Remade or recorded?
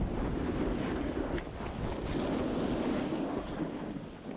recorded